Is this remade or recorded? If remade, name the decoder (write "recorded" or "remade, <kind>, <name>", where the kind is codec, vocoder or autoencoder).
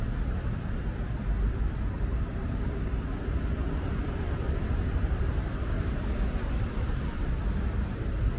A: remade, vocoder, BigVGAN v2